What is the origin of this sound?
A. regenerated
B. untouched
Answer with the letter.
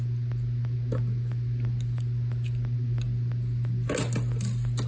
B